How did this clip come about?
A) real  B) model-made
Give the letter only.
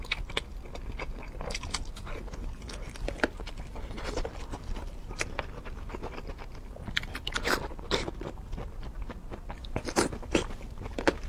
A